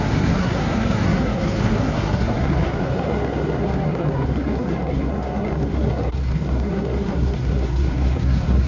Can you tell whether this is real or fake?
fake